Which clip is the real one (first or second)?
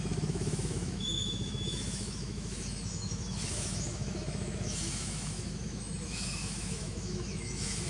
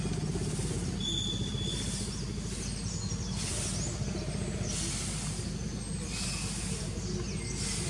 second